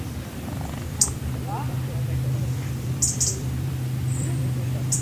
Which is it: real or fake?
fake